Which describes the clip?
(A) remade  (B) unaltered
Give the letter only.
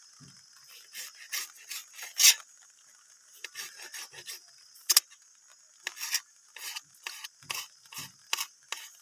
B